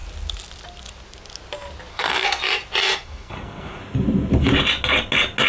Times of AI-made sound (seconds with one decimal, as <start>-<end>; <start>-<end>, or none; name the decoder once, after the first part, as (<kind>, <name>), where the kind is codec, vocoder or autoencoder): 1.9-2.4 (codec, SNAC); 2.8-3.8